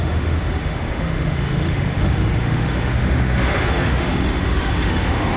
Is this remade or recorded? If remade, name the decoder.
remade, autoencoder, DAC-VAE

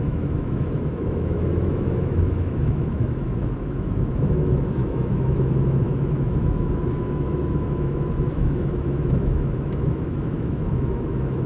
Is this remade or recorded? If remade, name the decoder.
remade, autoencoder, DAC-VAE